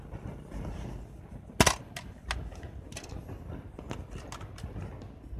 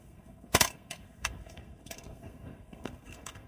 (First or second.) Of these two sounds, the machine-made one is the second